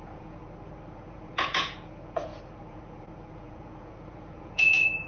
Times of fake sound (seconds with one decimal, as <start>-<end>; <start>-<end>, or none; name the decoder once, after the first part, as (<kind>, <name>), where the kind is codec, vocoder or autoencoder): 0.0-0.4 (vocoder, Vocos); 0.9-5.1